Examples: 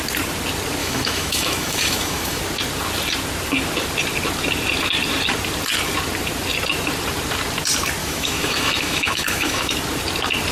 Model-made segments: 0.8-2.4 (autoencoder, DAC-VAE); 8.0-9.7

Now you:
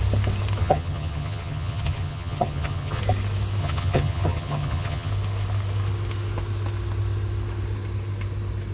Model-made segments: 0.6-3.0 (vocoder, HiFi-GAN); 3.6-5.1

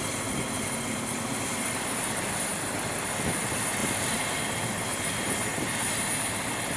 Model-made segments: 3.8-4.4 (vocoder, BigVGAN v2)

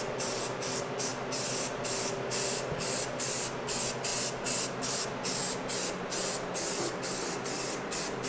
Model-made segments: none

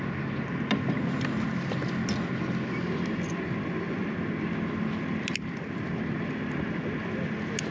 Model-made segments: none

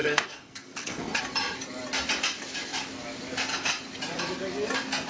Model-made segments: 0.0-1.2 (codec, SNAC)